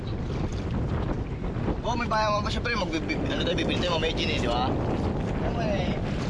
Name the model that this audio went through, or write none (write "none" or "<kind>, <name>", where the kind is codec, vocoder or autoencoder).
none